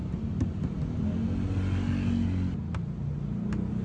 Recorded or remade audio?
recorded